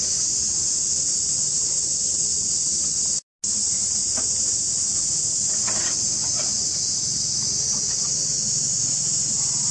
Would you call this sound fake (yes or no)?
no